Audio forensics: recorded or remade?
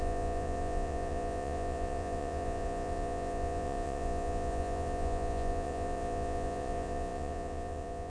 remade